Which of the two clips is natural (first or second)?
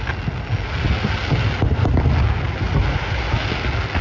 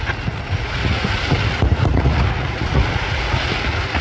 first